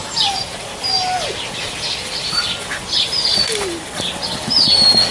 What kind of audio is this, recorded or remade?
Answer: recorded